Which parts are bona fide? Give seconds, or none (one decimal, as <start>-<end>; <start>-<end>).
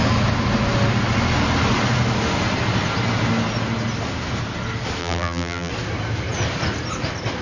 0.0-5.0; 5.7-7.4